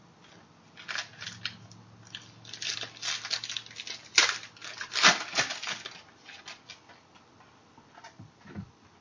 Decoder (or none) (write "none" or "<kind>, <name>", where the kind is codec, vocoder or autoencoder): none